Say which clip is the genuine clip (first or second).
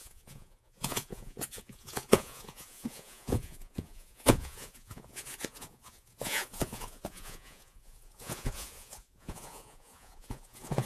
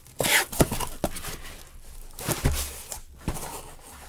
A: second